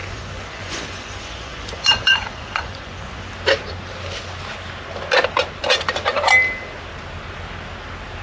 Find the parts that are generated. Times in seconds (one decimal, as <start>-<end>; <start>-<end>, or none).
0.0-3.3

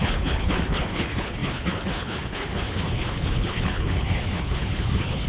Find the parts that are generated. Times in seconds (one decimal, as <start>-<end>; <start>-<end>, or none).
0.0-5.3

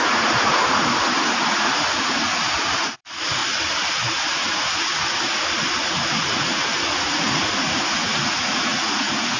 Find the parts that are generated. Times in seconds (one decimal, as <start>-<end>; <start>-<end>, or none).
0.0-3.4; 3.9-5.2; 5.8-9.4

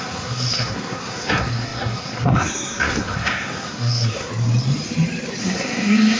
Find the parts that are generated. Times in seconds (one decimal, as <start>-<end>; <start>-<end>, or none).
0.0-4.3; 5.4-6.2

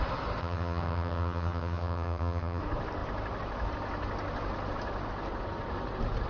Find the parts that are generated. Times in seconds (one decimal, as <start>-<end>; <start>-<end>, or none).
0.4-2.6

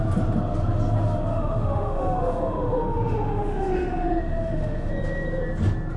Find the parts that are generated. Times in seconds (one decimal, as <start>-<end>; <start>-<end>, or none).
1.3-4.9

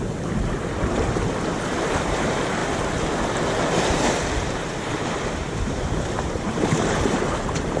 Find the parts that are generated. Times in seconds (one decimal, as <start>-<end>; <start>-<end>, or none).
0.0-2.6; 3.6-7.8

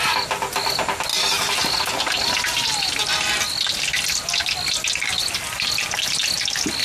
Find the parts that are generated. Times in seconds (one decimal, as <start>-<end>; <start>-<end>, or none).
none